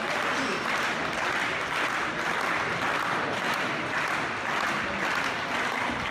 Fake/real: real